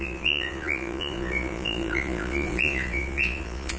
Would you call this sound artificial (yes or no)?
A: yes